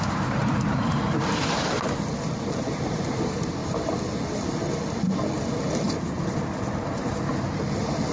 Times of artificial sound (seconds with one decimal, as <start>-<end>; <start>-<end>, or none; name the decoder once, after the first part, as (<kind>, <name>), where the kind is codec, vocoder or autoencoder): 0.0-3.6 (vocoder, BigVGAN v2); 6.1-7.3